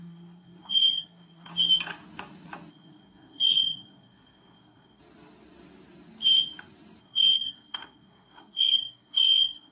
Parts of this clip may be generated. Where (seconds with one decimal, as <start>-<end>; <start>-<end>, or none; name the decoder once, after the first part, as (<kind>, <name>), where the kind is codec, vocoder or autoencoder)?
0.0-1.5 (codec, SNAC); 2.7-5.0; 7.0-9.7